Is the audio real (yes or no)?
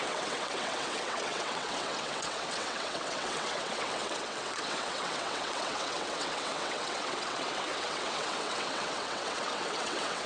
no